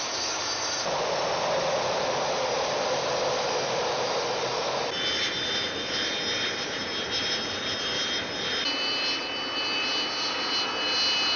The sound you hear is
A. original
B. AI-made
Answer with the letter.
A